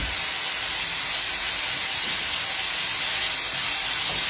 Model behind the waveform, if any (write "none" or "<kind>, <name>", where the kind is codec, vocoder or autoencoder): none